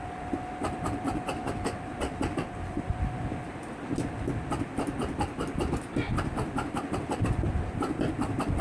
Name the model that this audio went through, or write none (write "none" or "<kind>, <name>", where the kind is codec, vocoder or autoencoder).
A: none